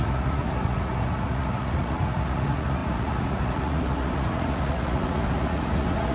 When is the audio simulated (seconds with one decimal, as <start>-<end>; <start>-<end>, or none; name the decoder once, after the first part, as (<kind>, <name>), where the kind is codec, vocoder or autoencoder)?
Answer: 0.0-6.1 (vocoder, Vocos)